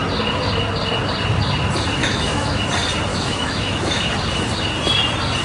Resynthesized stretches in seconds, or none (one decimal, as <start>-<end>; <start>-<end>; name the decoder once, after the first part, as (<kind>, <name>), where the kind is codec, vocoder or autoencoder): 2.0-2.6 (autoencoder, DAC-VAE); 3.1-4.1